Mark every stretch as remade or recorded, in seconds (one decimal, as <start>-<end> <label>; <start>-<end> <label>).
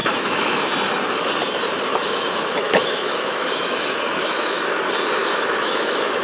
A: 0.0-0.6 remade; 0.6-1.9 recorded; 1.9-4.8 remade; 4.8-5.2 recorded; 5.2-6.2 remade